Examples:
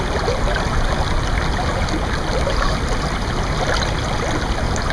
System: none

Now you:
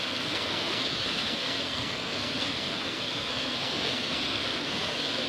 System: codec, SNAC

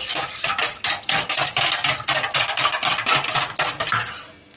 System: none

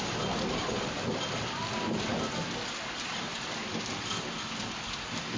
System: none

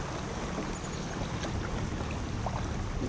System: none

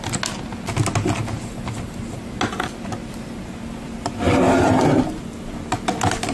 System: none